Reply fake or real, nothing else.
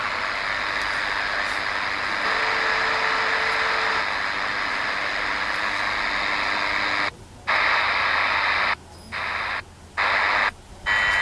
real